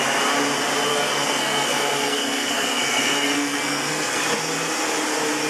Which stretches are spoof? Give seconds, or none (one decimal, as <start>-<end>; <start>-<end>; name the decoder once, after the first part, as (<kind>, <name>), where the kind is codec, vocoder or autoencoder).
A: 0.9-4.2 (codec, SNAC)